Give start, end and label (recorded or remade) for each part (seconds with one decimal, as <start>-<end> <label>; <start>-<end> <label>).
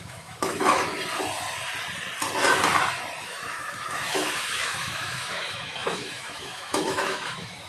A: 0.0-0.9 remade; 0.9-3.2 recorded; 3.2-7.7 remade